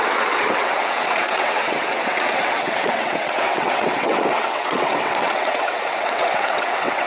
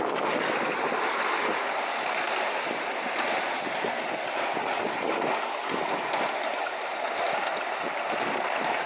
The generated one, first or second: first